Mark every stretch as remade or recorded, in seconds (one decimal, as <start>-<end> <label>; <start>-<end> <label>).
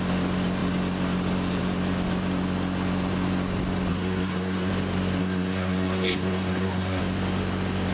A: 0.0-3.9 recorded; 3.9-4.7 remade; 4.7-5.2 recorded; 5.2-7.0 remade; 7.0-7.9 recorded